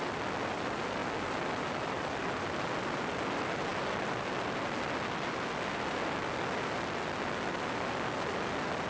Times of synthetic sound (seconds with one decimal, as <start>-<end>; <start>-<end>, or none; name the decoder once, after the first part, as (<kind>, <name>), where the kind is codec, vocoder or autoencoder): none